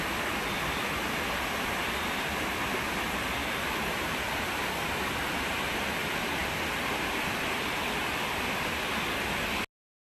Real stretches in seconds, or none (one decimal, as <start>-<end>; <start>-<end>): 0.0-3.4; 5.7-10.1